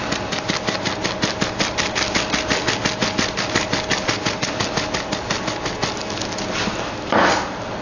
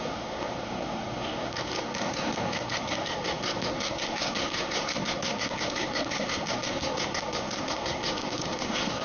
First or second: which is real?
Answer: first